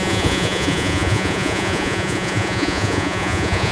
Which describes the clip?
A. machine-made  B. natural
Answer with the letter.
A